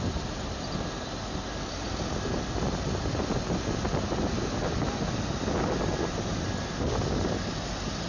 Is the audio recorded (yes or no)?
yes